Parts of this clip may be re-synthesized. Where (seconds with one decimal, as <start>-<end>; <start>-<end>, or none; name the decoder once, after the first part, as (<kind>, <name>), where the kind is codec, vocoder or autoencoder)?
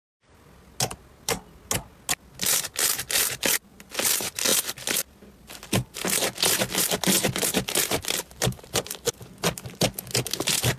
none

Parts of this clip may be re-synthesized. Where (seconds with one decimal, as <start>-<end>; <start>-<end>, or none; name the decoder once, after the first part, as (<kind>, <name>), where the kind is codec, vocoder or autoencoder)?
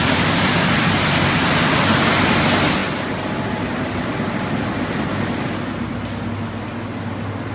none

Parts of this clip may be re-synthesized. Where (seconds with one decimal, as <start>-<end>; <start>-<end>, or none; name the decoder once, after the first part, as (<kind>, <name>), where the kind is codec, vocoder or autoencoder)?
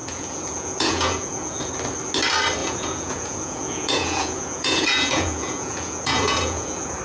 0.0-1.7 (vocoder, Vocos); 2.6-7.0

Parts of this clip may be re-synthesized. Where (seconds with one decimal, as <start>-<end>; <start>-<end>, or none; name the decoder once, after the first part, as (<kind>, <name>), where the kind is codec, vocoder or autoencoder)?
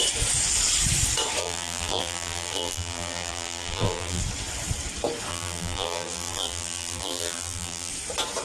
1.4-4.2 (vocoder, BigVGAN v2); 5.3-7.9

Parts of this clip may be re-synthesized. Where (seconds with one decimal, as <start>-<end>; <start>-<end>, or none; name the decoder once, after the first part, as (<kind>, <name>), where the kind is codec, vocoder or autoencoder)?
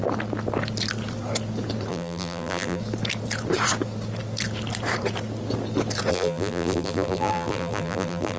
1.9-2.8 (vocoder, BigVGAN v2); 6.1-8.4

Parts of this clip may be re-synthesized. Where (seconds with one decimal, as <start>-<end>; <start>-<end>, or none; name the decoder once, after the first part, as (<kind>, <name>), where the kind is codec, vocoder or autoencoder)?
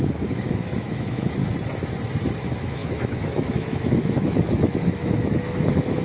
0.0-1.4 (autoencoder, DAC-VAE); 2.4-6.0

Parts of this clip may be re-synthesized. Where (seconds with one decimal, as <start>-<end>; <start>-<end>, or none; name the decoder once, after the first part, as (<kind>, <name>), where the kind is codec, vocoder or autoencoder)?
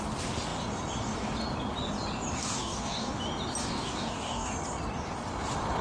2.4-3.1 (codec, DAC); 3.6-4.5